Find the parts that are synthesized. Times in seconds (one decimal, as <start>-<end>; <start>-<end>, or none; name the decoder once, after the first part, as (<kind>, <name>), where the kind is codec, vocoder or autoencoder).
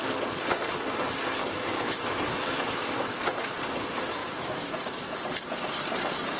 1.4-3.2 (autoencoder, DAC-VAE); 4.2-4.7